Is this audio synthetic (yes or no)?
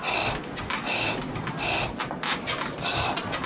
no